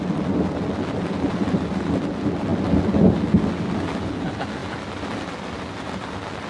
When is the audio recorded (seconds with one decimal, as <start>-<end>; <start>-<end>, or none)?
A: 0.0-6.5